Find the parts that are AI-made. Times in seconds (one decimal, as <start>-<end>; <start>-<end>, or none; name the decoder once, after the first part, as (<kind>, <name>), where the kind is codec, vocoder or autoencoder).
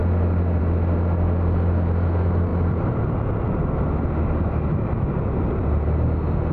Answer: none